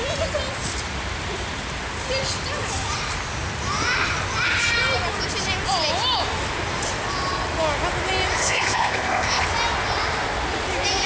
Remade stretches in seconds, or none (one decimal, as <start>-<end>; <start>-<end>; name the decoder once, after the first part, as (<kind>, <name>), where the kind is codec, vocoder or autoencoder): 8.4-9.4 (codec, ZipCodec)